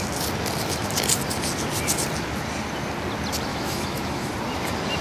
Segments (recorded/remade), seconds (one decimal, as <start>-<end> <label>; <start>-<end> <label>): 0.0-3.5 recorded; 3.5-4.3 remade; 4.3-5.0 recorded